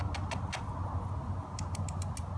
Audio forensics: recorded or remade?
recorded